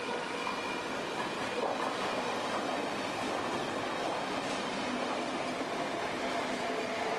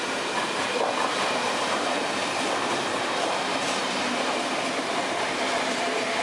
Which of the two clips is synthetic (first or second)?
second